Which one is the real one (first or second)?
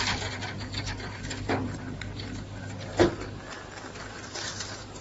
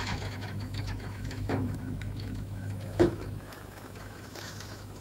first